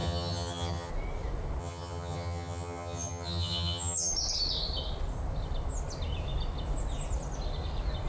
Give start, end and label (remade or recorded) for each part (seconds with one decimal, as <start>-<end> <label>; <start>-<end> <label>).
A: 0.0-0.9 remade; 0.9-1.6 recorded; 1.6-4.1 remade; 4.1-8.1 recorded